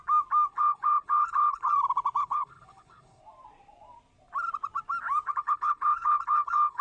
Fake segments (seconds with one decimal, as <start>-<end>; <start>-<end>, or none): 0.5-1.7; 2.2-3.2; 5.3-6.8

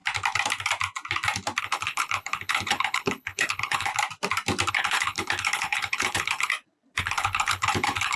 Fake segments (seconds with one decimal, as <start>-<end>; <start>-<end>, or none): 1.6-3.9; 4.7-6.5; 7.0-8.2

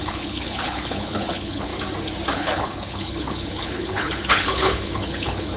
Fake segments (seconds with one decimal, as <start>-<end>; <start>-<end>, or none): 0.0-1.7; 2.3-5.6

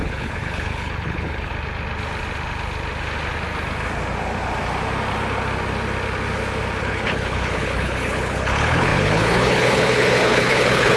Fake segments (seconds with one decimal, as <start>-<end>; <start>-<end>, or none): 0.0-1.5; 6.8-11.0

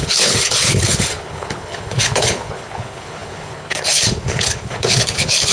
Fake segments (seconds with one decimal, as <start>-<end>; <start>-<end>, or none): 0.0-5.5